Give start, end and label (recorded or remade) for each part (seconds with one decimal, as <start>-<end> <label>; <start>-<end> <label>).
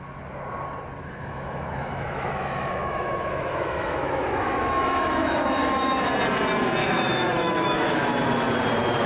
0.0-1.0 recorded; 1.0-6.1 remade; 6.1-6.8 recorded; 6.8-8.0 remade; 8.0-9.1 recorded